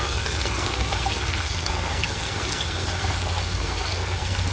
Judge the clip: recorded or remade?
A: remade